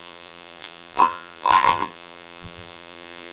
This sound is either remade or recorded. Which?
remade